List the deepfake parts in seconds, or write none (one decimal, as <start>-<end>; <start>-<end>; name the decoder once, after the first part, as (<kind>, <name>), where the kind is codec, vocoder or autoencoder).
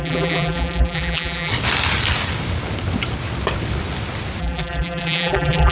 0.0-1.5 (vocoder, BigVGAN v2); 4.4-5.7